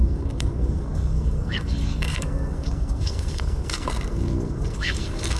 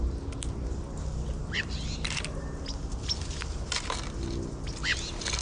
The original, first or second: second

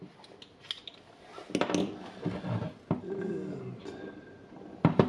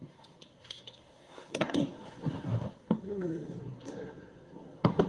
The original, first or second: first